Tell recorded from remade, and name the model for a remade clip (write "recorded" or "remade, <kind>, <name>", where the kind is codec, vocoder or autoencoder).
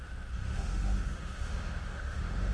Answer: remade, autoencoder, DAC-VAE